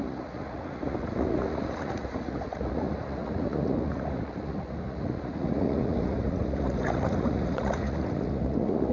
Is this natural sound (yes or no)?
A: no